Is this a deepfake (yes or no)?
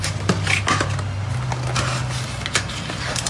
no